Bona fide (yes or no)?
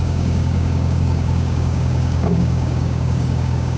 no